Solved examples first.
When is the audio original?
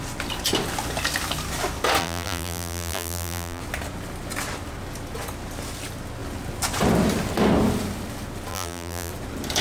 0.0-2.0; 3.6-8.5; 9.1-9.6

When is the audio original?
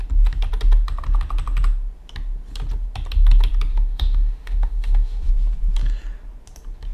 0.0-3.7; 5.3-6.9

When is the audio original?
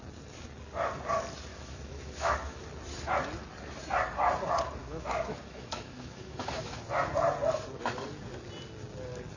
0.0-1.5; 2.6-4.8; 6.8-9.4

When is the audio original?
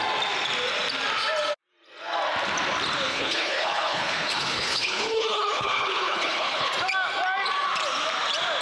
0.0-3.1; 6.7-8.6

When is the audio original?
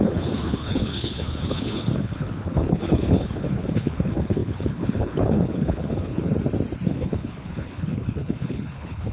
6.3-6.9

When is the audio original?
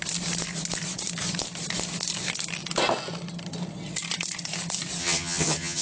0.0-5.0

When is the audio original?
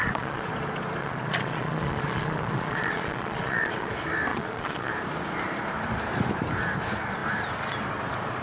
0.5-1.0; 3.9-4.3; 4.9-8.4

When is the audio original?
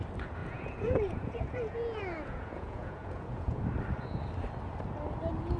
0.0-0.4; 3.6-5.6